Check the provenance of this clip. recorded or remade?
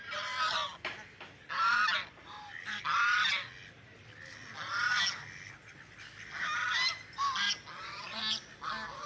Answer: recorded